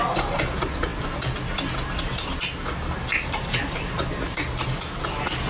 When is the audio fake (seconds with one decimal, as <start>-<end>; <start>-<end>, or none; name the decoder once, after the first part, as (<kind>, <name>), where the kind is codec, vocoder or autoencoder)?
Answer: 3.1-3.9 (vocoder, BigVGAN v2)